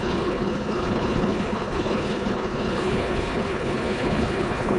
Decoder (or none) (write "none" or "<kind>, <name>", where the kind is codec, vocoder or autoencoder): codec, HILCodec